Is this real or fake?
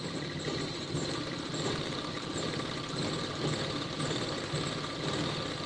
fake